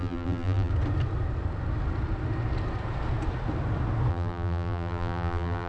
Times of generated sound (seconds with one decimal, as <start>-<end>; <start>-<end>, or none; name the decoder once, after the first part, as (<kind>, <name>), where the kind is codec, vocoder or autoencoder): 0.0-0.7 (vocoder, BigVGAN v2); 4.1-5.7